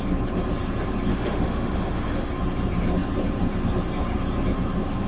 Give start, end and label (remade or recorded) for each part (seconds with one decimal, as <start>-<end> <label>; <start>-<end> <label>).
0.0-1.1 recorded; 1.1-2.3 remade; 2.3-5.1 recorded